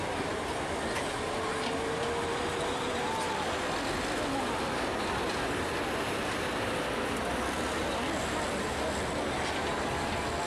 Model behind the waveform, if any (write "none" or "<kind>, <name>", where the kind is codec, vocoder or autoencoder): none